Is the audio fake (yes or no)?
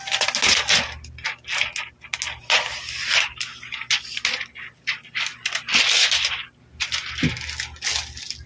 no